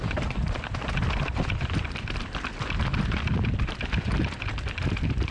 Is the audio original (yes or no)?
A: no